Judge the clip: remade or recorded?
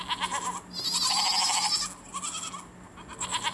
recorded